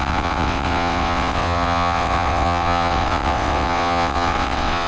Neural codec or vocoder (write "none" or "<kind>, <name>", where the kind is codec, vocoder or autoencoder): vocoder, WaveNeXt